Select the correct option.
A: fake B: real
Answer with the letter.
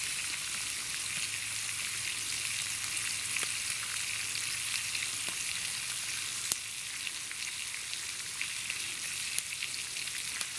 B